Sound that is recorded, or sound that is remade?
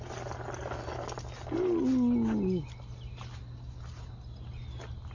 recorded